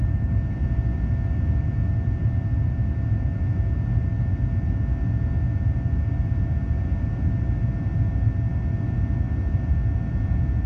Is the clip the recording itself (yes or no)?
yes